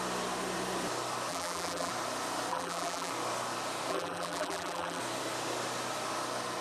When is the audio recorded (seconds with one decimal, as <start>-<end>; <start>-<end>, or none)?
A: 0.0-1.3; 1.9-2.5; 3.1-3.9; 5.0-6.6